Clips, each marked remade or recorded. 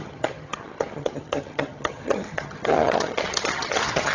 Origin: remade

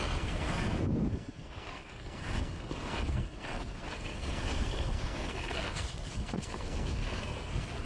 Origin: remade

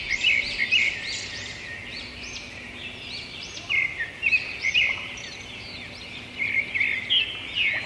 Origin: recorded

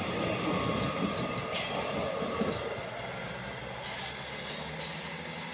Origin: recorded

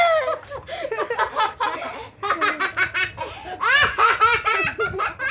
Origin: recorded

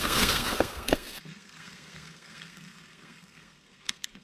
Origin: remade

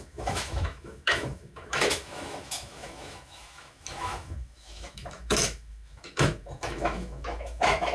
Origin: remade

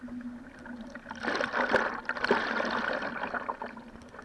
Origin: recorded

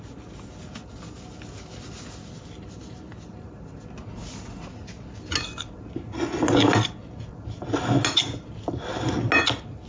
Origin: recorded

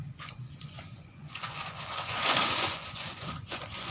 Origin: remade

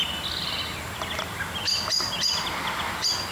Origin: recorded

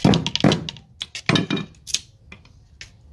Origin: recorded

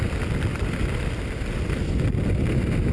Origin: recorded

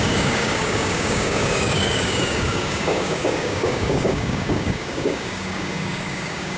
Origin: remade